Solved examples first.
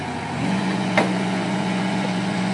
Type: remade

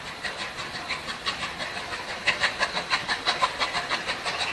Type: recorded